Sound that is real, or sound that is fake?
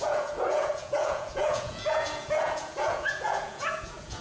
fake